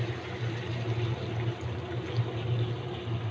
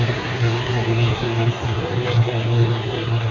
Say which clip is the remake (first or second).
second